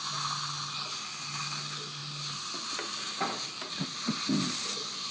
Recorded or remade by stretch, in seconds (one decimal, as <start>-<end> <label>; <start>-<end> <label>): 0.0-5.1 recorded